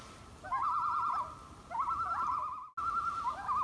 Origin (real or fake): real